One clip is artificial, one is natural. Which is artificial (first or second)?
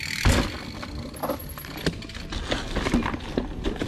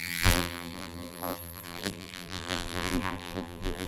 second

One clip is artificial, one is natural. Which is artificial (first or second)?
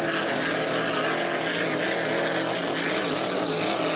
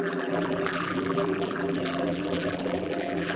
second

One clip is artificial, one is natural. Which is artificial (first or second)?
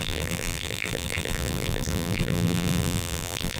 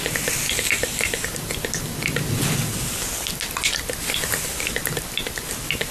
first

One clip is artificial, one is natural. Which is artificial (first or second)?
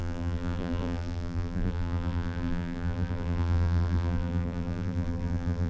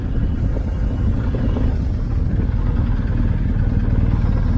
first